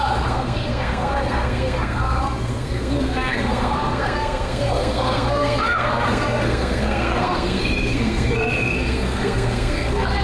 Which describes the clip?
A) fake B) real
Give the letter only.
A